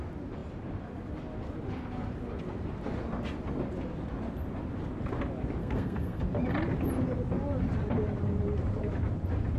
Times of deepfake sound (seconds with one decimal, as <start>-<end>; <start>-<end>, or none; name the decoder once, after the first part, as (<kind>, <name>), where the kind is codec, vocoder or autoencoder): 5.6-6.2 (codec, SNAC)